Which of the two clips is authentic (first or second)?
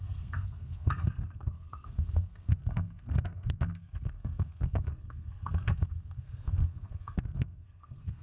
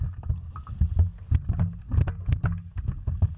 second